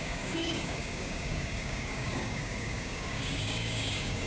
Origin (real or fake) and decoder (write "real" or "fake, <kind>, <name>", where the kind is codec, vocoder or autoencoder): fake, codec, DAC